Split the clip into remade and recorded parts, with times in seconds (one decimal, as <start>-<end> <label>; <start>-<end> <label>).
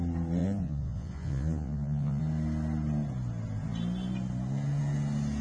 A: 0.0-0.4 recorded; 0.4-2.2 remade; 2.2-5.4 recorded